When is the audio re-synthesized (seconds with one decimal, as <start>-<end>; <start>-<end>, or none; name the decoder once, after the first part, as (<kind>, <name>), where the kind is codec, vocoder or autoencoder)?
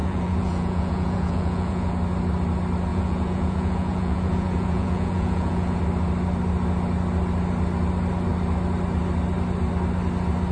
0.0-1.9 (vocoder, Vocos); 2.9-5.8